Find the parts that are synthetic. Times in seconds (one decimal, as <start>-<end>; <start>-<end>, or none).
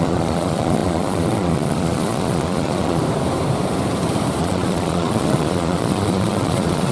0.0-3.0; 4.4-6.9